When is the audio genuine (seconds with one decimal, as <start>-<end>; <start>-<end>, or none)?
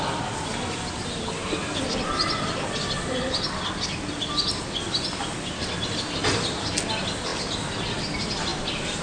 0.0-9.0